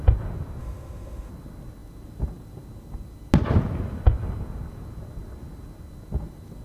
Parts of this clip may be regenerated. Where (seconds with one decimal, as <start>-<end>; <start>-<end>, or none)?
0.6-1.3